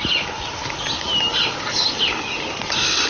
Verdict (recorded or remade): recorded